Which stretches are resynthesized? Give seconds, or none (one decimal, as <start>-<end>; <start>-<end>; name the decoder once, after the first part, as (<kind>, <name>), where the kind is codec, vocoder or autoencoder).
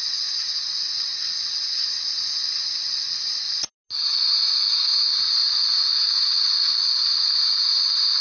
none